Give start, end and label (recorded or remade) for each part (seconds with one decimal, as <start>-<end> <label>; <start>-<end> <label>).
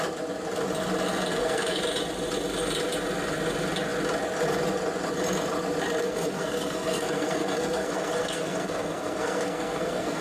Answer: 0.0-1.3 recorded; 1.3-1.8 remade; 1.8-6.0 recorded; 6.0-10.2 remade